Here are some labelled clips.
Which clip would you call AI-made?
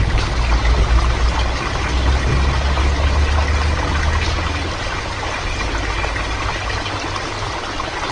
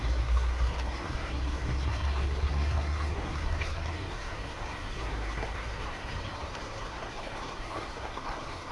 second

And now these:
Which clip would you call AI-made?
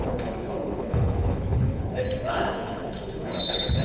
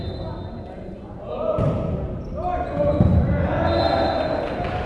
first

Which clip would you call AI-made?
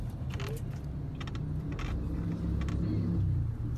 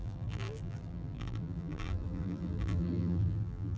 second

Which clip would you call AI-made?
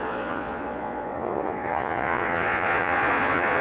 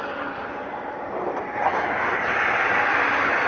first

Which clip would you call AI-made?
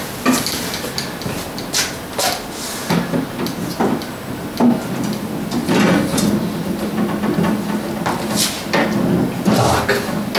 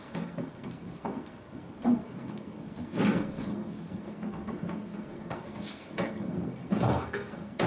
second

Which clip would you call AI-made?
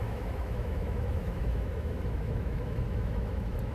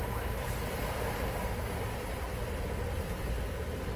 first